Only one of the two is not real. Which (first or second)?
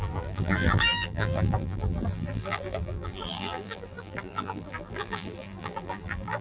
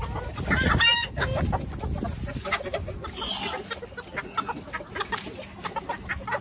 first